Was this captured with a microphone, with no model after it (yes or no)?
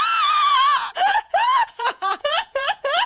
no